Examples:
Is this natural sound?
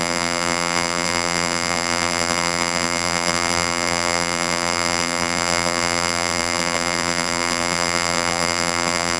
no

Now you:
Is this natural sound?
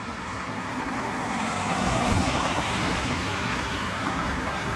no